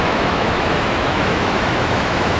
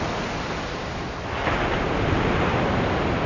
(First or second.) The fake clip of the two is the first